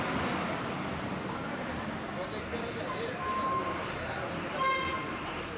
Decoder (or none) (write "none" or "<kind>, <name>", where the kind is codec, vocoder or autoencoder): none